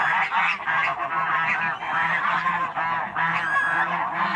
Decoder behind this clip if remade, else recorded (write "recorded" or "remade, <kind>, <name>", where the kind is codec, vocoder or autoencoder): recorded